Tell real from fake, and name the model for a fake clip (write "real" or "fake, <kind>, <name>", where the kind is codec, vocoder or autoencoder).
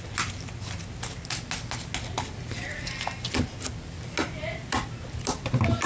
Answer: real